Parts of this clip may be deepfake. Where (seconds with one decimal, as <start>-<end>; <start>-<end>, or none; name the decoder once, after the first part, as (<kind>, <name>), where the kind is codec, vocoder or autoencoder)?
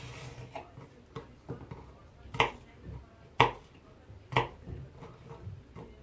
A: none